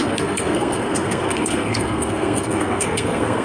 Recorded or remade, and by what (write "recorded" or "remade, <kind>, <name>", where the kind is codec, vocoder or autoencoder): remade, codec, SNAC